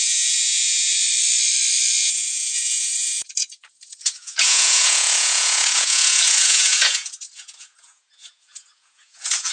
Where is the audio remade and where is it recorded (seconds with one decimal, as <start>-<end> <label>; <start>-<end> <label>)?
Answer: 0.0-0.9 remade; 0.9-2.0 recorded; 2.0-9.5 remade